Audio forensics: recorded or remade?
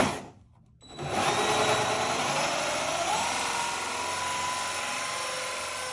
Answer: recorded